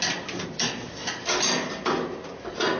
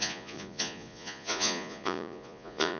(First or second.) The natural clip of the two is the first